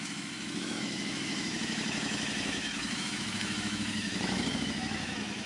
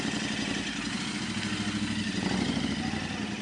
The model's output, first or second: first